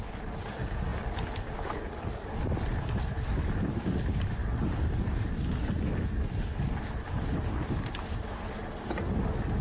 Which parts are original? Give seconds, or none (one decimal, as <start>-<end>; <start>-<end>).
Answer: 0.0-4.4; 4.9-9.6

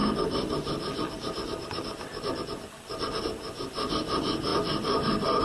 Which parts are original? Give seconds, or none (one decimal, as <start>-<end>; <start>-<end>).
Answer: 0.0-4.5